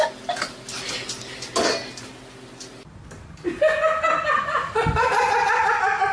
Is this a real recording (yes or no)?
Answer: yes